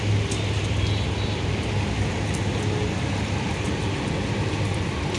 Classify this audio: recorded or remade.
recorded